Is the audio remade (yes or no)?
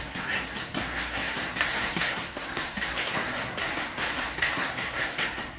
yes